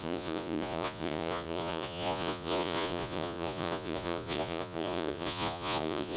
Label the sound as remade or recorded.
remade